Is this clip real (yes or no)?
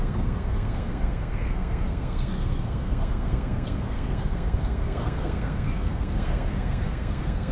no